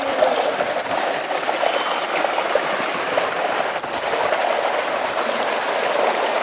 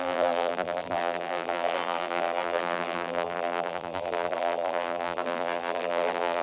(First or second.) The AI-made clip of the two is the second